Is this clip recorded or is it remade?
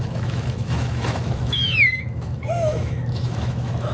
remade